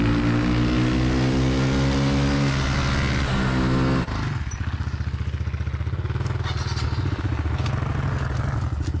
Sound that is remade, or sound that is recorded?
recorded